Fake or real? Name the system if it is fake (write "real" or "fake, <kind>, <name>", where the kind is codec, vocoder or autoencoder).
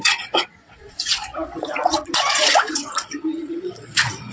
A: fake, vocoder, Vocos